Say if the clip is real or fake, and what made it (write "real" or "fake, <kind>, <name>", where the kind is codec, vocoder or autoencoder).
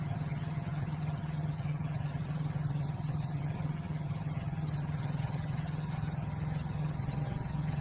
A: fake, vocoder, HiFi-GAN